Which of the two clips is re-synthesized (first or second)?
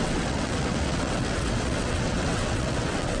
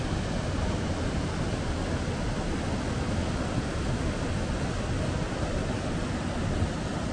first